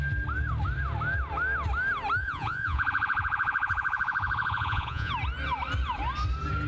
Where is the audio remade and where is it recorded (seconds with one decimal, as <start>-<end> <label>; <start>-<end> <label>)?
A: 0.0-2.2 recorded; 2.2-5.1 remade; 5.1-6.7 recorded